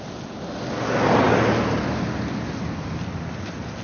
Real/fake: real